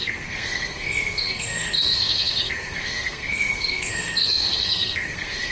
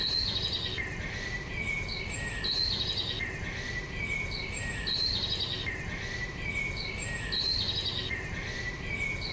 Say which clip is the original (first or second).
second